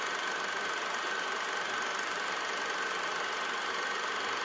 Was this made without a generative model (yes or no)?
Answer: yes